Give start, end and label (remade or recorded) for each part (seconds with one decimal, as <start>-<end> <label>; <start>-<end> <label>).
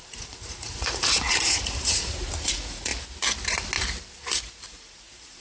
0.0-2.9 remade; 2.9-4.4 recorded; 4.4-5.4 remade